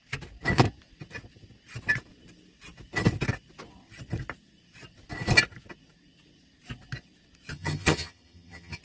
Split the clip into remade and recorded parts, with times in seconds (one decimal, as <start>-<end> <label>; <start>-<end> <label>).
0.0-7.5 recorded; 7.5-8.8 remade